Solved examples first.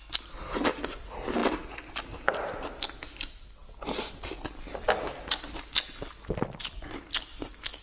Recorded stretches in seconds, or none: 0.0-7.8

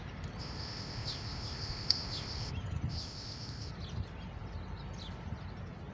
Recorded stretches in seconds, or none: 0.0-0.4; 2.5-2.9; 3.7-5.9

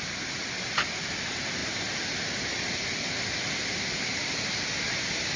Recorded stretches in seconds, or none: 0.0-5.4

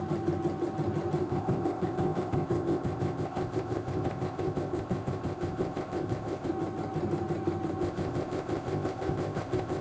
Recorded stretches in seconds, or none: 0.0-1.2; 6.5-7.8